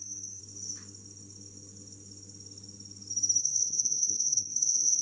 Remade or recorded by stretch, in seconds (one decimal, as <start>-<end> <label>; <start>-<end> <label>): 0.0-0.4 remade; 0.4-3.4 recorded; 3.4-5.0 remade